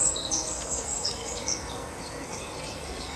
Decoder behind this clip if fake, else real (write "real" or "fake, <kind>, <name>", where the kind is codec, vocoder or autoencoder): fake, codec, SNAC